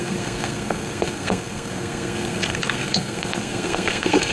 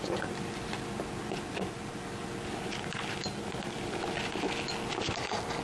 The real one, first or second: second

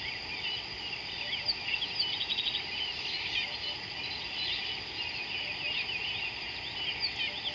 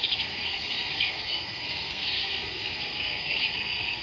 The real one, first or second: first